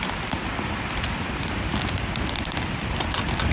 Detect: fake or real real